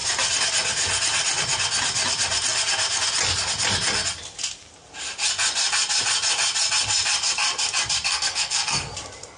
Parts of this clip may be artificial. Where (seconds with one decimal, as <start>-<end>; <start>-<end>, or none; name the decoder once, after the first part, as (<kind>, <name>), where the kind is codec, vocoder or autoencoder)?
8.1-8.9 (codec, SNAC)